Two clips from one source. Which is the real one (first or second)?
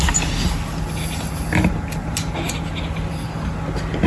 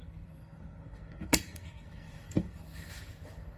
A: first